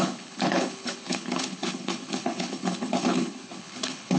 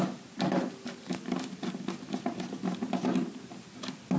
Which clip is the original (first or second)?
second